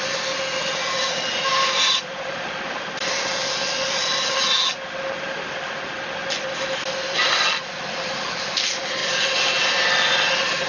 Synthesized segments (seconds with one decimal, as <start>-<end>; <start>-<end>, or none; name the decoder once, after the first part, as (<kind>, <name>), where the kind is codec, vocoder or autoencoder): 1.5-2.5 (vocoder, BigVGAN v2)